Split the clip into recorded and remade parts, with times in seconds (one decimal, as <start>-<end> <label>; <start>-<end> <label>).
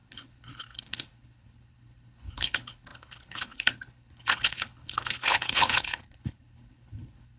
0.0-7.4 remade